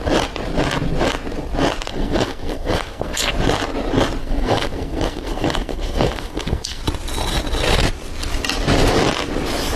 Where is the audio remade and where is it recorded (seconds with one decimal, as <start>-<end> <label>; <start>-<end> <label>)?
0.0-1.9 recorded; 1.9-3.3 remade; 3.3-4.2 recorded; 4.2-6.8 remade; 6.8-9.8 recorded